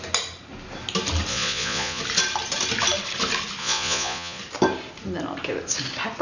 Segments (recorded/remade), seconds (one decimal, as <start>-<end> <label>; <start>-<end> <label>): 0.0-1.3 recorded; 1.3-2.0 remade; 2.0-3.6 recorded; 3.6-4.4 remade; 4.4-6.2 recorded